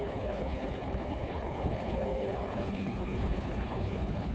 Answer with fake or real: fake